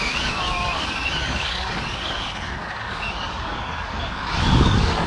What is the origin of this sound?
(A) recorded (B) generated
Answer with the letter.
B